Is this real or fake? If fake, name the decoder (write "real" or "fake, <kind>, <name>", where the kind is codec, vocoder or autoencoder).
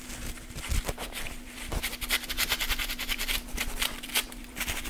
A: fake, vocoder, BigVGAN v2